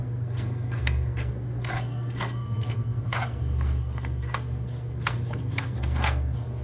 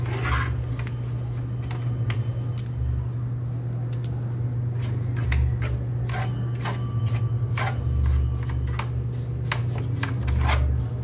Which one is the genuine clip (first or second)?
second